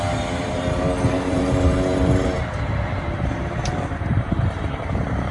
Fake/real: fake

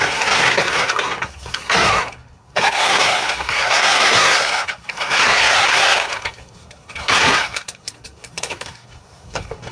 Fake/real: fake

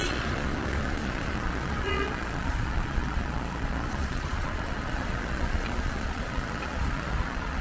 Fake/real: fake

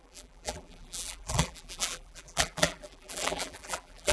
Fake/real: fake